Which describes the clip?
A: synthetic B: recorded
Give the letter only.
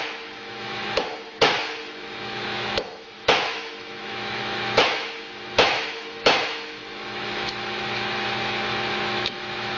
A